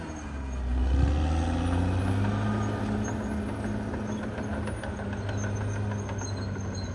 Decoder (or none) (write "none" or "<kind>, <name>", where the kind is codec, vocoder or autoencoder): none